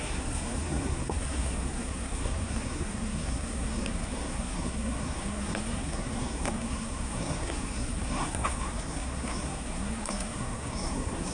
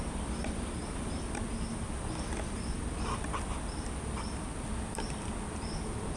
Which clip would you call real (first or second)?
second